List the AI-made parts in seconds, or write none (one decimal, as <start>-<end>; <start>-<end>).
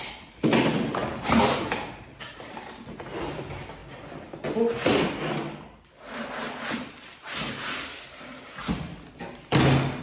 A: none